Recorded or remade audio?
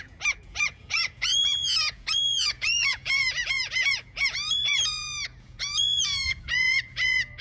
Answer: remade